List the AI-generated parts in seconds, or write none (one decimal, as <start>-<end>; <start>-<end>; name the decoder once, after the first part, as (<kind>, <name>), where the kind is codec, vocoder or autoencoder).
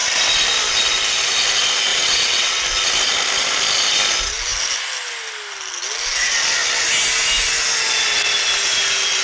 1.9-2.6 (vocoder, WaveNeXt)